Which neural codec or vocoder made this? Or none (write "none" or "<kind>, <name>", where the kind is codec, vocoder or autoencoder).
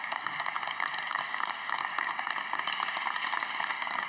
codec, DAC